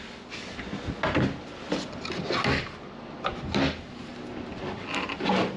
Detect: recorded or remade recorded